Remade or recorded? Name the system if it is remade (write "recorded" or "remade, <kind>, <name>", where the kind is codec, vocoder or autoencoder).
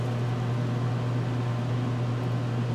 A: recorded